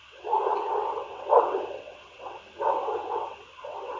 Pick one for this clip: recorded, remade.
remade